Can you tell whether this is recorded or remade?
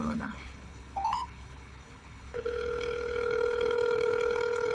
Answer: remade